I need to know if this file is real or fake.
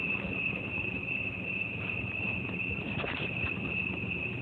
fake